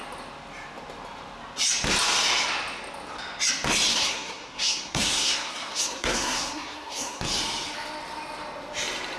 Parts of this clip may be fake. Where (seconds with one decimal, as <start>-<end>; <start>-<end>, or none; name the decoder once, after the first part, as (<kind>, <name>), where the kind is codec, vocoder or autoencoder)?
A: 3.9-7.2 (codec, SNAC)